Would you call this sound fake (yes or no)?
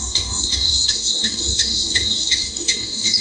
yes